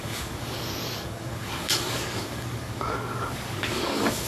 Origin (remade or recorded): remade